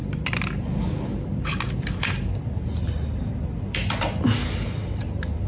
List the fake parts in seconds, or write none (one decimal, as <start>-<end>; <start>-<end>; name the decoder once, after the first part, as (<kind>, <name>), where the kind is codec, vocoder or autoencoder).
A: none